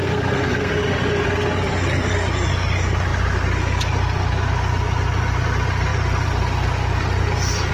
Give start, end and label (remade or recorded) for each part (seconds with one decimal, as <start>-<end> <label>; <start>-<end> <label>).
0.0-0.7 remade; 0.7-7.7 recorded